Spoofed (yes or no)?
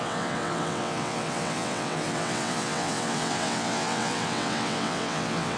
yes